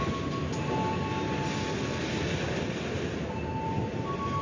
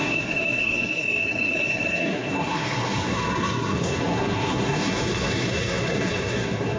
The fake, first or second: second